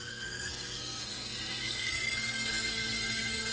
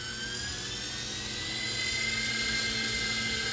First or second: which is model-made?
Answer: first